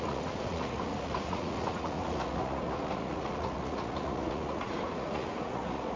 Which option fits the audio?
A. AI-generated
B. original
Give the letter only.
A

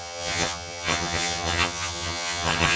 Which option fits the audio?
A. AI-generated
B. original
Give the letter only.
A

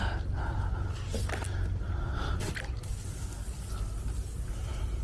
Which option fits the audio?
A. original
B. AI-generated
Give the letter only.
A